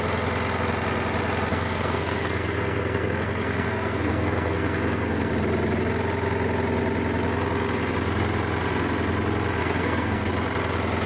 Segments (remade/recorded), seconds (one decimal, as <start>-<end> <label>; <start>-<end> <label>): 0.0-1.5 recorded; 1.5-5.3 remade; 5.3-9.6 recorded; 9.6-10.3 remade; 10.3-11.1 recorded